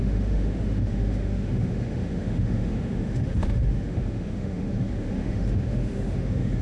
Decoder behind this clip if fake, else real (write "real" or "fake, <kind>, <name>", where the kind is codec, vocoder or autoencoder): fake, autoencoder, DAC-VAE